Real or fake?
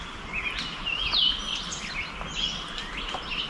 real